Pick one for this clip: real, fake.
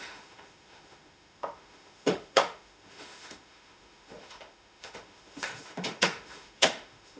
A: fake